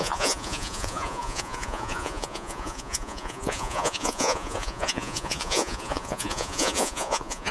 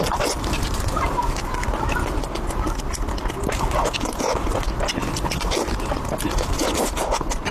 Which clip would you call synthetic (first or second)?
first